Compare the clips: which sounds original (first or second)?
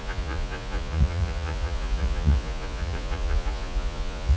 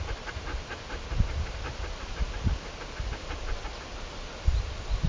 second